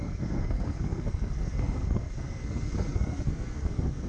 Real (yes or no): no